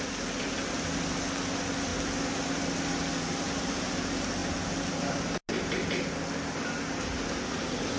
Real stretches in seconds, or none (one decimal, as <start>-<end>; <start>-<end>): 0.0-8.0